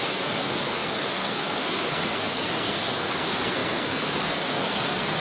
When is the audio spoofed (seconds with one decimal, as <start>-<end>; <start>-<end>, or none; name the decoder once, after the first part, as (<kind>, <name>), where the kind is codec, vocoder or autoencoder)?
0.0-5.2 (codec, SNAC)